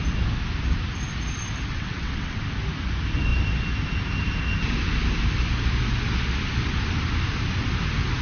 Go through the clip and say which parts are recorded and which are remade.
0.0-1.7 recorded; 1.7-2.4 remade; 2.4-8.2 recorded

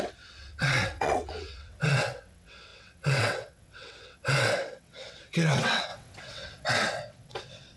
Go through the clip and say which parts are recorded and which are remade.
0.0-7.8 remade